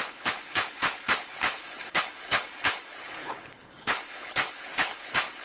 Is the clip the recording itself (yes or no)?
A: no